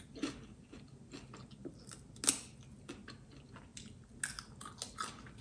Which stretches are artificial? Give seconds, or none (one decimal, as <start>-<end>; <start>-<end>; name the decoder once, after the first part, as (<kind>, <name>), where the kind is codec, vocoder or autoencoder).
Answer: none